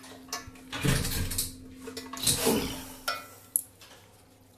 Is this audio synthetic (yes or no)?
no